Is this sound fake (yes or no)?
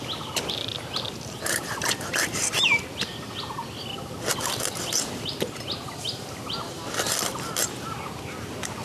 no